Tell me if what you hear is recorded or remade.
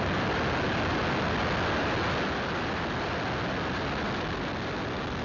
recorded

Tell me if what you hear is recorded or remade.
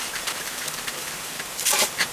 remade